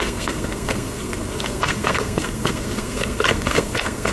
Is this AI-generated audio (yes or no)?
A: yes